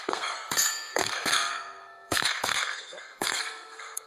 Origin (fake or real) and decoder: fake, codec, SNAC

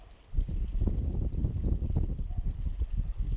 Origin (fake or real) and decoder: real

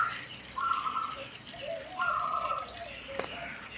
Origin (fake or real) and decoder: real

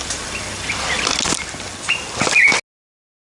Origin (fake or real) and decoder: real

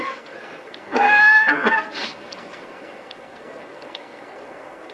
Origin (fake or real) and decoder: fake, codec, SNAC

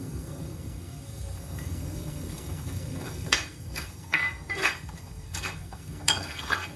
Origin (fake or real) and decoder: fake, codec, SNAC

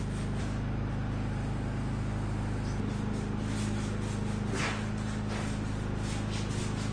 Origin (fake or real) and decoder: real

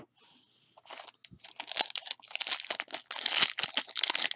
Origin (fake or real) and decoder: real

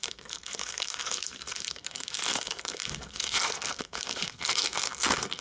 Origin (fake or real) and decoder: fake, codec, SNAC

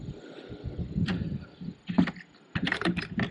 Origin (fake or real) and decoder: real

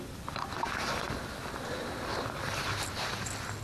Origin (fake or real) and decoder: real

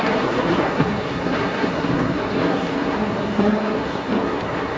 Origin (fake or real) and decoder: fake, codec, SNAC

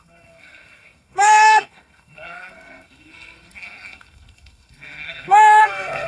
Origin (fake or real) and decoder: fake, codec, SNAC